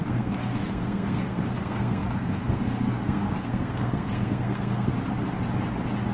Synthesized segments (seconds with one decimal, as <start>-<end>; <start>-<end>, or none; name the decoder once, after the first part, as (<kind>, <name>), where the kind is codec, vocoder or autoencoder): 0.0-4.9 (codec, SNAC)